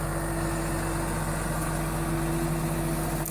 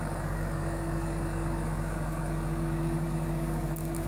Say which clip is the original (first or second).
first